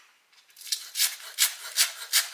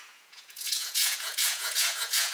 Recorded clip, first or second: first